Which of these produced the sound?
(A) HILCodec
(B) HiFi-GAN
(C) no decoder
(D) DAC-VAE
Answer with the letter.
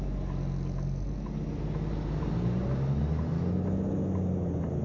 C